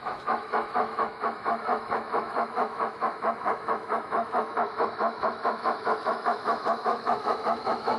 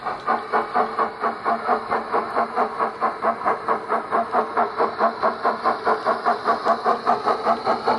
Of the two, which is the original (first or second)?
second